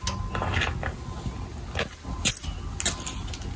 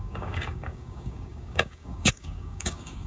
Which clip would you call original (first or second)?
first